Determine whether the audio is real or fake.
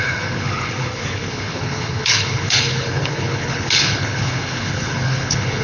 fake